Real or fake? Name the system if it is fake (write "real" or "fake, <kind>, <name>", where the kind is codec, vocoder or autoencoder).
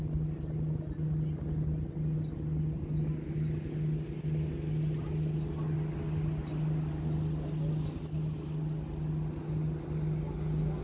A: real